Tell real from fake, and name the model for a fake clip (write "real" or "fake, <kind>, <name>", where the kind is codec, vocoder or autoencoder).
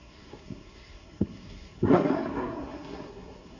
fake, codec, SNAC